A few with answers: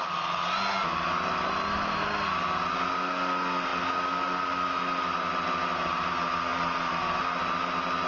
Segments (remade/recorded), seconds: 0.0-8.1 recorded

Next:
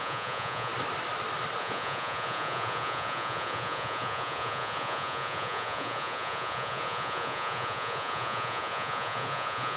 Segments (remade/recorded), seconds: 0.0-0.7 remade; 0.7-1.6 recorded; 1.6-9.8 remade

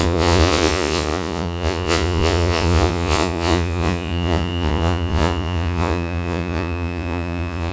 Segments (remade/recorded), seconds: 0.0-7.7 remade

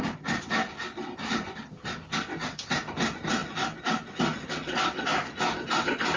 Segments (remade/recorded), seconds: 0.0-6.2 recorded

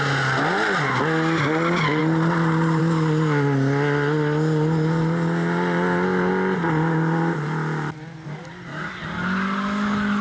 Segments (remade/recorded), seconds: 0.0-10.2 recorded

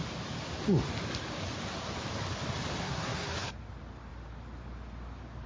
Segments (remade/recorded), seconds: 0.0-2.8 recorded; 2.8-3.5 remade; 3.5-5.5 recorded